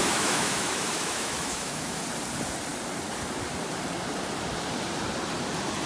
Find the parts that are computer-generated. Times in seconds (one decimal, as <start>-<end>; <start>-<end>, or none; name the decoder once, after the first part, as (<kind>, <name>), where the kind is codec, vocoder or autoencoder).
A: 0.0-2.0 (autoencoder, DAC-VAE)